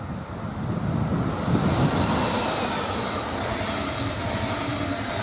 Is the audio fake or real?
real